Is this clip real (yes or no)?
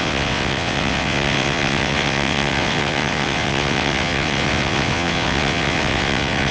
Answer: no